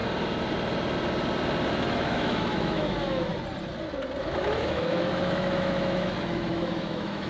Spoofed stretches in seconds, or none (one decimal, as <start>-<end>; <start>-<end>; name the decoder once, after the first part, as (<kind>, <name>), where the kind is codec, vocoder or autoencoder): 1.7-3.3 (autoencoder, DAC-VAE); 4.2-7.3